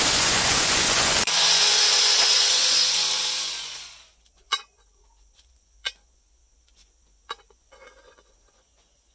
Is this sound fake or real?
fake